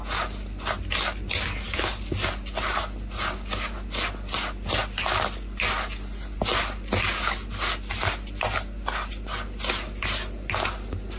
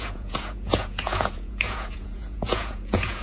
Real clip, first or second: first